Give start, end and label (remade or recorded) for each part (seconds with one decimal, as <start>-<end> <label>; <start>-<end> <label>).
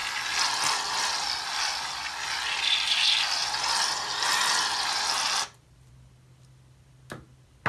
0.0-7.7 recorded